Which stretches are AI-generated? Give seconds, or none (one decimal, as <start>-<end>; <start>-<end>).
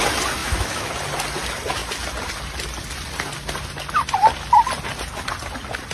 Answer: 0.4-0.9